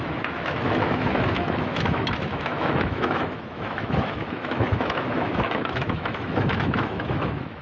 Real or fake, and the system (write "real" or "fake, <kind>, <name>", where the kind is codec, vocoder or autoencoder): fake, autoencoder, DAC-VAE